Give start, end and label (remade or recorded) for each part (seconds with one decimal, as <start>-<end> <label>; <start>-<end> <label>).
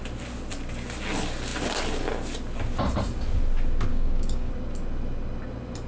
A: 0.0-3.9 recorded; 3.9-4.5 remade; 4.5-5.9 recorded